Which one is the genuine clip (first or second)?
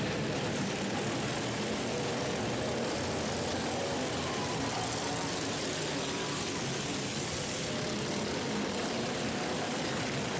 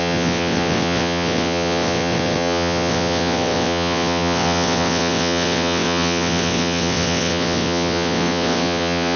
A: first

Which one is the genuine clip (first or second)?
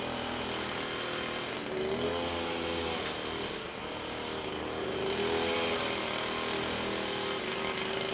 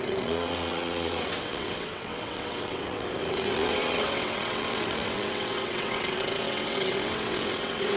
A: first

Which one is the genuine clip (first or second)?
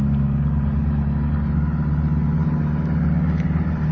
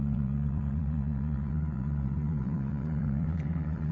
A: first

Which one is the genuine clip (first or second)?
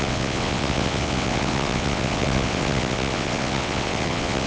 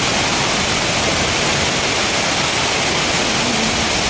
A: second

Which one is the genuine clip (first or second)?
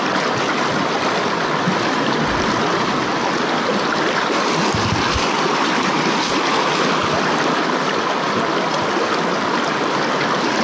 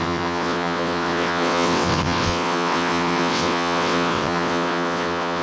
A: first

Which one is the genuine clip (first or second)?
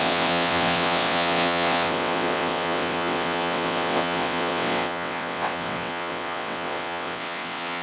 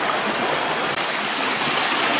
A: second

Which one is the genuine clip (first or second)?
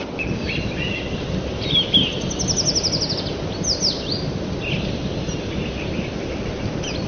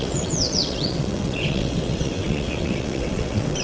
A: first